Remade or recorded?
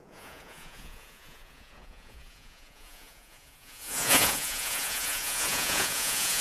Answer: remade